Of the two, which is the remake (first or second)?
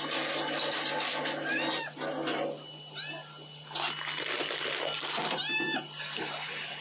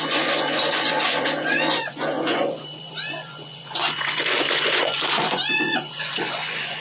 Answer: second